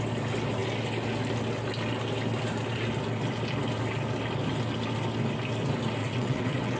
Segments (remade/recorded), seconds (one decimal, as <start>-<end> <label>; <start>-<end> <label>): 0.0-6.0 recorded; 6.0-6.8 remade